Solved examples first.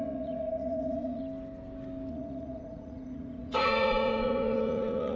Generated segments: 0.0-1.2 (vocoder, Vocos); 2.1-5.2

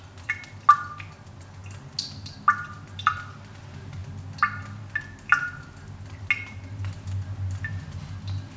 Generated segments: none

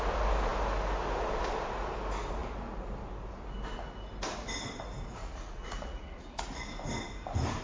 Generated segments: 5.2-6.7 (vocoder, Vocos)